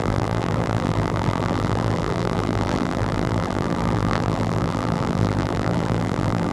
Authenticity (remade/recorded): remade